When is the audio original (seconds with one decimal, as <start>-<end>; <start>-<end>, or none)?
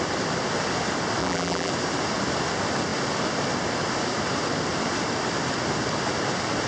0.0-1.2; 1.7-6.7